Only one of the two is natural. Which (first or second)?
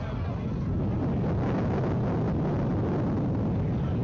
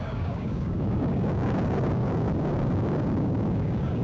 first